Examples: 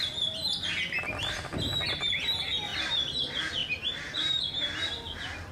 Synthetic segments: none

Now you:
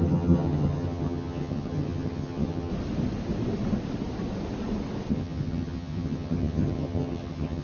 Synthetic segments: 0.0-2.7; 5.1-7.6

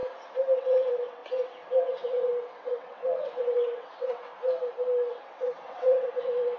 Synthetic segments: 0.6-1.2; 1.8-4.3; 5.1-6.6